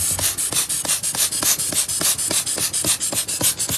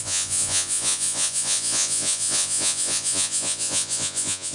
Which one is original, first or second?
first